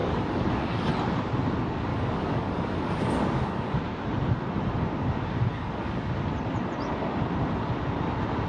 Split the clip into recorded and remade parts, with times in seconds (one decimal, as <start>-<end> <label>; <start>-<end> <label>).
0.0-0.9 remade; 0.9-1.9 recorded; 1.9-3.8 remade; 3.8-5.5 recorded; 5.5-6.1 remade; 6.1-8.5 recorded